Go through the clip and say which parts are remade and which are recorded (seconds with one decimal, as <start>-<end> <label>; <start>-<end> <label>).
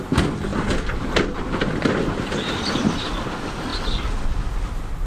0.0-5.1 recorded